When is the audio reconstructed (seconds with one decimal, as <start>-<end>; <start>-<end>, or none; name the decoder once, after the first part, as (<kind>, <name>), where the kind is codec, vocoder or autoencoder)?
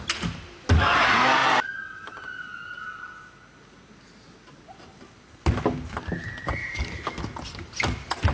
6.6-7.2 (codec, DAC)